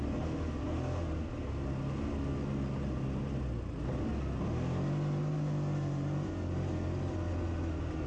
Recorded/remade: recorded